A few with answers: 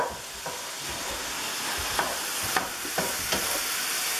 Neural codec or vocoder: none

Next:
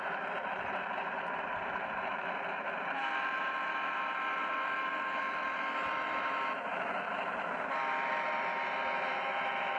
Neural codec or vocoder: vocoder, BigVGAN v2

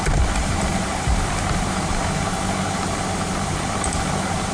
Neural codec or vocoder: vocoder, BigVGAN v2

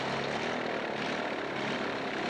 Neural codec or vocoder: none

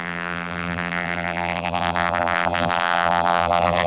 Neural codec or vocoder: vocoder, BigVGAN v2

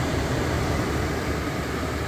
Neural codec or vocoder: none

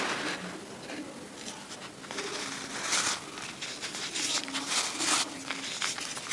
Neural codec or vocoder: none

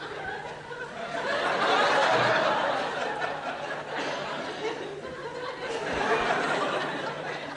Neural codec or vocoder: none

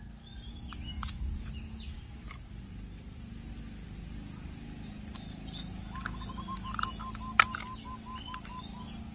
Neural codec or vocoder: none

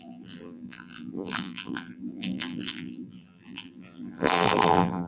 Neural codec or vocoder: vocoder, BigVGAN v2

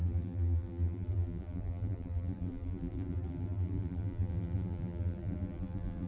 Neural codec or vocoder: vocoder, BigVGAN v2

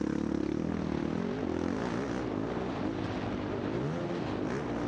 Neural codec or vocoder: none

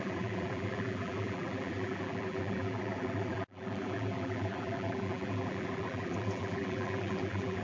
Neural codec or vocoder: vocoder, BigVGAN v2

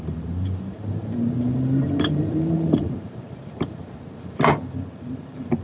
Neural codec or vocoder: vocoder, BigVGAN v2